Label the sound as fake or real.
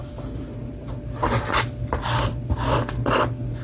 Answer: real